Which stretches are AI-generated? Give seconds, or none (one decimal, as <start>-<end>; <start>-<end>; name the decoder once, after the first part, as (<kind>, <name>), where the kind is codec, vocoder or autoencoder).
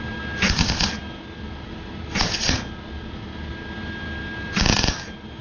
none